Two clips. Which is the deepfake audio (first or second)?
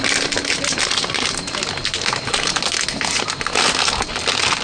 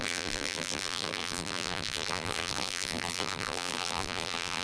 second